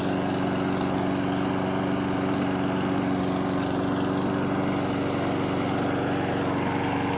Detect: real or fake real